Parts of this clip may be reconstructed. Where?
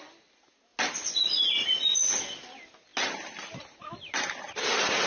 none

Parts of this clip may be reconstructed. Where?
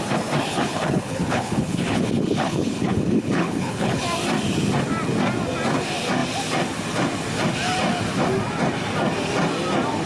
0.5-4.0 (codec, HILCodec)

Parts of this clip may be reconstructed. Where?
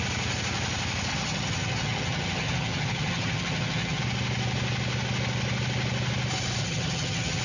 1.1-4.0 (vocoder, HiFi-GAN); 6.6-7.4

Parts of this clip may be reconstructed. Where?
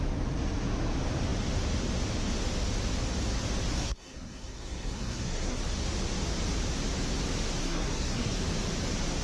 3.7-5.6 (codec, SNAC); 7.6-8.4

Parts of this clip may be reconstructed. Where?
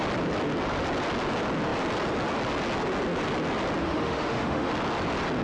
3.8-4.7 (autoencoder, DAC-VAE)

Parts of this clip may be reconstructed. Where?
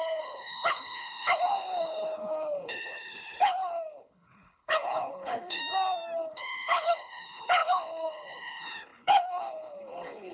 0.0-5.6 (codec, HILCodec); 6.2-10.3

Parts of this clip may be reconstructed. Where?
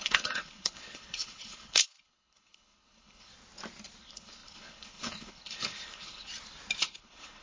0.0-3.3 (codec, HILCodec); 4.0-6.3; 6.8-7.4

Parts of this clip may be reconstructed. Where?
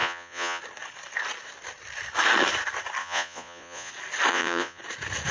0.0-0.6 (vocoder, Vocos); 3.0-3.9; 4.3-4.8